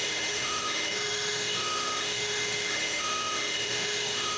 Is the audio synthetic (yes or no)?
yes